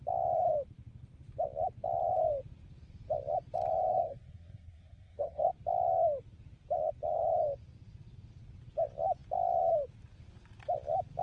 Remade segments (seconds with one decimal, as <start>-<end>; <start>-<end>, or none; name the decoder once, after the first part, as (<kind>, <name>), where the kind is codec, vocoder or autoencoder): 3.9-5.5 (codec, SNAC)